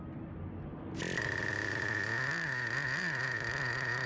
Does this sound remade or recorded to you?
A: recorded